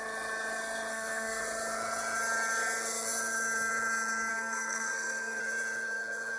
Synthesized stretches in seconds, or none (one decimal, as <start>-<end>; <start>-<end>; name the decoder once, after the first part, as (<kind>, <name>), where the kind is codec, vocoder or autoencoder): 0.9-1.4 (codec, SNAC); 4.3-5.4